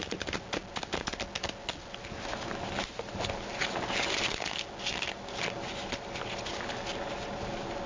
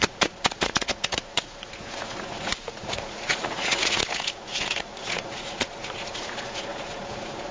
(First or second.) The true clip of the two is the first